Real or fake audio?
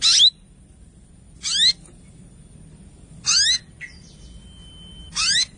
real